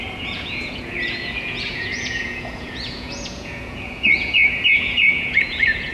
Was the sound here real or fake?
fake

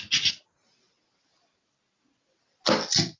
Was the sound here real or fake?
real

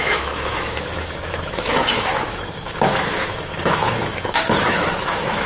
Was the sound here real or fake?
fake